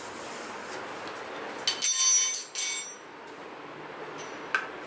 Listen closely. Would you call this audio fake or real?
real